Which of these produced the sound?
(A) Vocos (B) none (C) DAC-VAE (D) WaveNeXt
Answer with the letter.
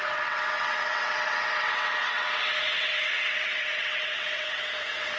D